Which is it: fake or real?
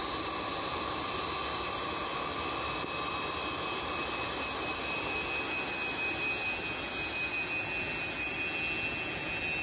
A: real